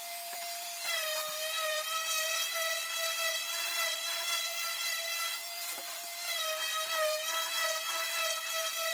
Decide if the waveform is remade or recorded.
remade